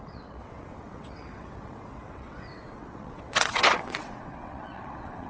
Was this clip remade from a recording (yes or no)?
yes